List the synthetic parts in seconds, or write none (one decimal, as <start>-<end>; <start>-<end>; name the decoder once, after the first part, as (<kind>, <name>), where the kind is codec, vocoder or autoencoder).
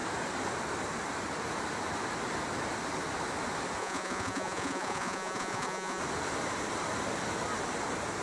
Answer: 3.8-6.0 (vocoder, Vocos)